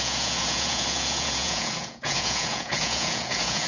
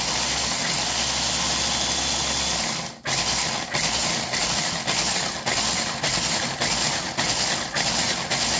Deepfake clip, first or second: first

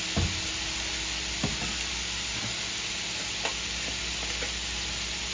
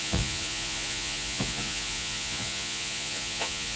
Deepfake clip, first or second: second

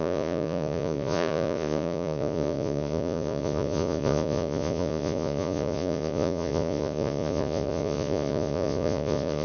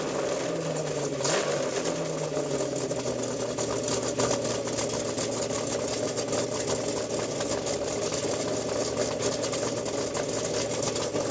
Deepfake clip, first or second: first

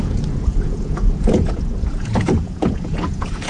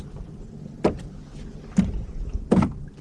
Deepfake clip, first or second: first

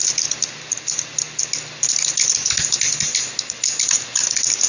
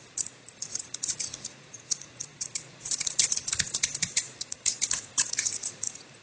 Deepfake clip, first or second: second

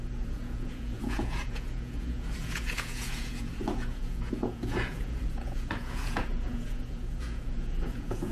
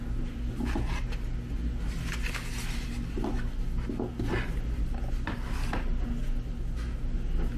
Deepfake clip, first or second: first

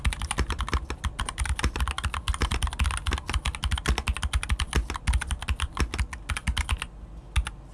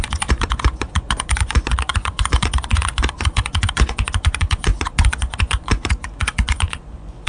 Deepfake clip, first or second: second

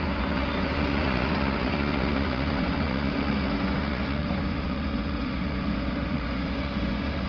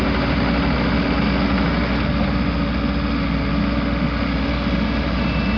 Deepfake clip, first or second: first